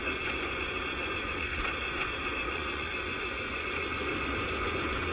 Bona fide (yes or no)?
no